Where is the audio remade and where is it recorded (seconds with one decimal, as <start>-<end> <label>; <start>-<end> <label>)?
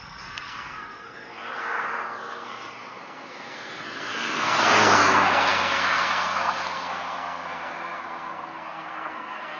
0.0-9.6 remade